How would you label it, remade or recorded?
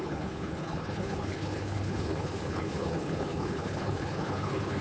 remade